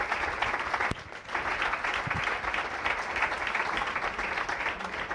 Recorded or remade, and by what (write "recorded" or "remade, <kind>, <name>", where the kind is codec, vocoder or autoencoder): recorded